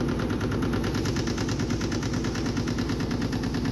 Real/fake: real